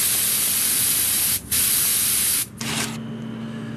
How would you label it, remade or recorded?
recorded